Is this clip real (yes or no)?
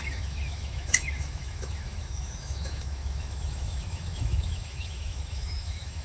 no